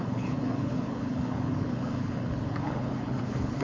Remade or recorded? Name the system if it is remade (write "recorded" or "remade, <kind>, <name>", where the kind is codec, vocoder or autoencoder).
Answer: remade, codec, HILCodec